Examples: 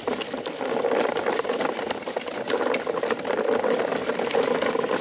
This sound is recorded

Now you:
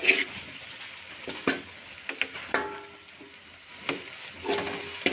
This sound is recorded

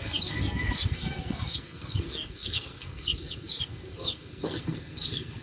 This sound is remade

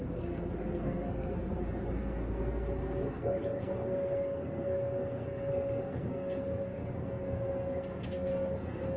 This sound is remade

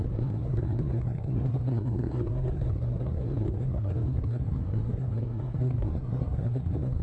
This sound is remade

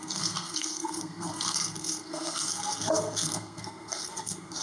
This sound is remade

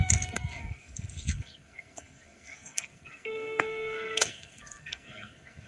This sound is remade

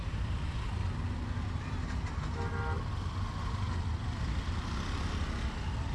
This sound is recorded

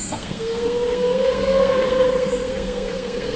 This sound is remade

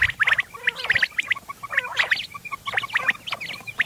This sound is recorded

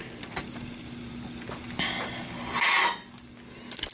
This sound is recorded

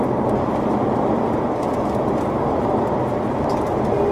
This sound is recorded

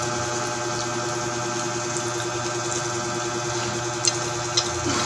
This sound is recorded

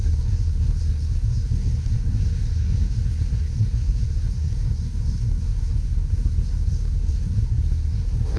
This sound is remade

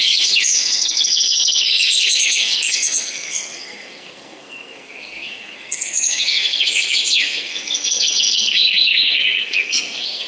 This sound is remade